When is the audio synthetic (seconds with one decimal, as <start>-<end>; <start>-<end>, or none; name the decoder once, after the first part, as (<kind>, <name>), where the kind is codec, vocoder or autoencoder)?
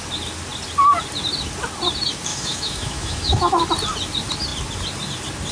2.3-3.6 (autoencoder, DAC-VAE)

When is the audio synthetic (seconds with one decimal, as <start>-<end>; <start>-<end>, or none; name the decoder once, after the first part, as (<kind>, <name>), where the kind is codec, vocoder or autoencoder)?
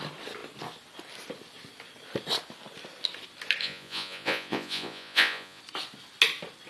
3.6-5.6 (vocoder, Vocos)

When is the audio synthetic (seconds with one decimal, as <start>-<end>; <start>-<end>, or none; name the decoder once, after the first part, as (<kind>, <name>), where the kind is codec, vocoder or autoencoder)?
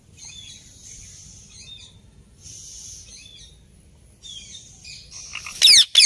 none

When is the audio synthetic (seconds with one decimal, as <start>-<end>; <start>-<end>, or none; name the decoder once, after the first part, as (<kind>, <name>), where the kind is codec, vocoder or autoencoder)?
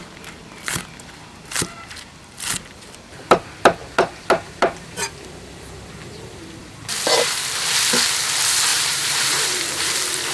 3.8-5.3 (vocoder, BigVGAN v2); 8.7-9.4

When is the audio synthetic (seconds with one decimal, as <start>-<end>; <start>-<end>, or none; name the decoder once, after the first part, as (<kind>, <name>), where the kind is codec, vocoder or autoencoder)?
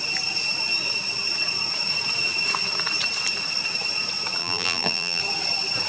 4.4-5.2 (vocoder, BigVGAN v2)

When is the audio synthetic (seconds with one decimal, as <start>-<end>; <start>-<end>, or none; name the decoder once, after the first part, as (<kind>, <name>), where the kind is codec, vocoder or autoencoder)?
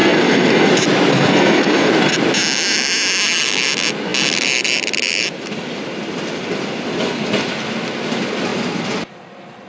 0.0-0.7 (codec, SNAC); 1.1-1.9